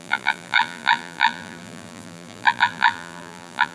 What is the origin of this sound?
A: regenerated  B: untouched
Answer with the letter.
A